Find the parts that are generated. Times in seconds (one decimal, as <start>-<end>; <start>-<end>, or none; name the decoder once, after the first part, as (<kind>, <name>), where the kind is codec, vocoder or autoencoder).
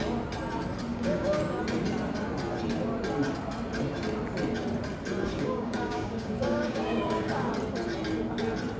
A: 0.9-1.6 (codec, DAC); 5.3-7.5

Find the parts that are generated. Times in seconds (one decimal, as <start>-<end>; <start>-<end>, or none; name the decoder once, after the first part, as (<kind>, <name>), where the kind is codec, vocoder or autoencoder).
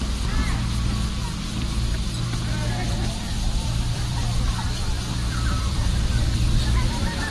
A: 0.0-0.4 (vocoder, BigVGAN v2); 1.4-1.9; 3.0-7.3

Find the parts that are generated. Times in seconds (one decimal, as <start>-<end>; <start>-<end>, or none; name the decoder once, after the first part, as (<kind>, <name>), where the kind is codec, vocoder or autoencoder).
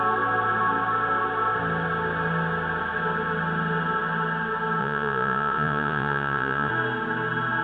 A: 4.8-6.7 (vocoder, Vocos)